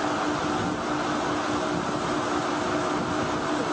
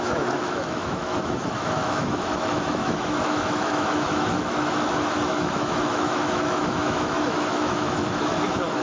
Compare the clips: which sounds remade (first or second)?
second